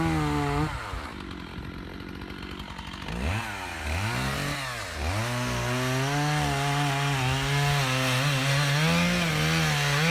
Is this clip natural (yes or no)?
yes